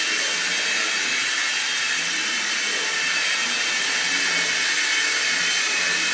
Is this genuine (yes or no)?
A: yes